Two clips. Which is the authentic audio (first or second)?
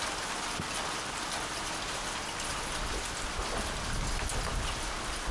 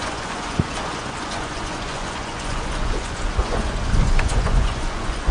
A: first